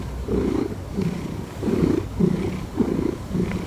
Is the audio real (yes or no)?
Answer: no